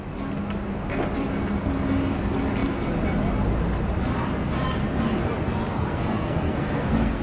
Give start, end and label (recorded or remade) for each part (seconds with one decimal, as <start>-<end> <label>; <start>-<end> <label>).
0.0-5.7 recorded; 5.7-7.2 remade